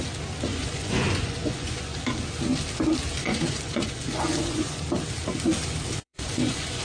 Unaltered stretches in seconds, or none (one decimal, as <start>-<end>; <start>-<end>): 0.0-0.5; 2.0-3.2; 4.8-5.9